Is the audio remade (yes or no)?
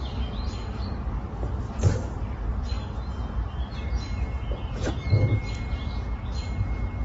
no